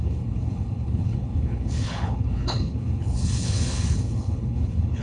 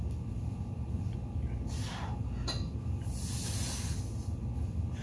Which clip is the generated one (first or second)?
first